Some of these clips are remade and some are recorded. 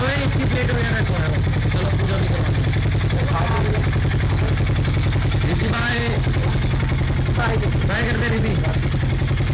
recorded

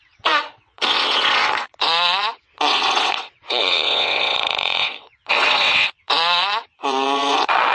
remade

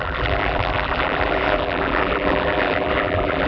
remade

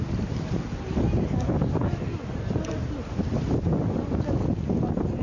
recorded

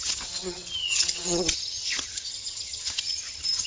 remade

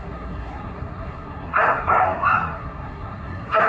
remade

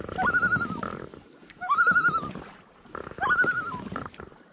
remade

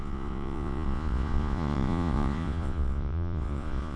remade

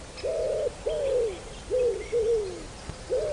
recorded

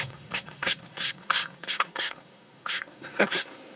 remade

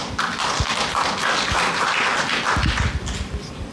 recorded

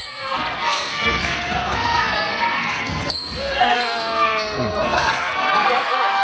remade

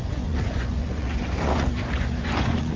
remade